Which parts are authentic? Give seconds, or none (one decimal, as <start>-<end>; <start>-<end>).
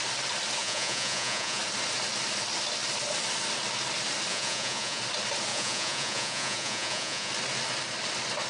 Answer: 0.0-0.6; 1.6-4.3; 5.0-5.5; 7.3-8.5